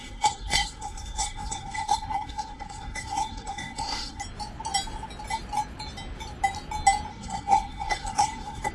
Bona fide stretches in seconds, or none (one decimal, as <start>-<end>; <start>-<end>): 4.2-7.1